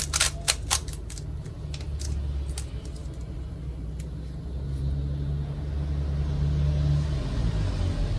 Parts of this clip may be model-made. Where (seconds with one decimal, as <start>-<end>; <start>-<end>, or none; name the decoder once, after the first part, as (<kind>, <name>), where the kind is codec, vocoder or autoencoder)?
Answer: none